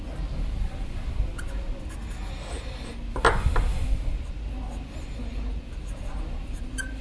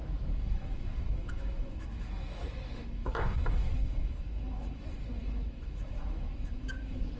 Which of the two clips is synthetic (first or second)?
second